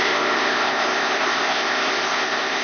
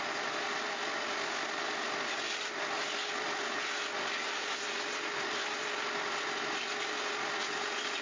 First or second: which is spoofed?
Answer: first